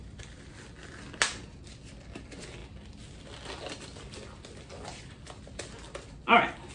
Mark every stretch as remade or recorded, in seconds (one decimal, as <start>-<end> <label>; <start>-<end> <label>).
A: 0.0-6.7 recorded